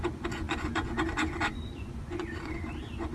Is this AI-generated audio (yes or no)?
yes